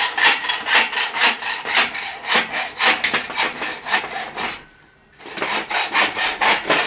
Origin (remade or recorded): recorded